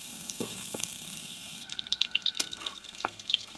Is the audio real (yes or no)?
no